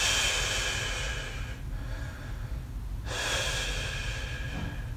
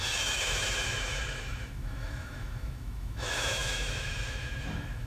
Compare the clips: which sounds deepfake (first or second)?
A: second